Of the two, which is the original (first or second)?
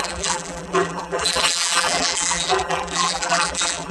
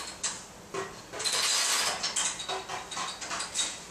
second